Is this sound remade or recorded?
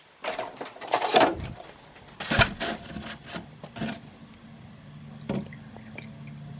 recorded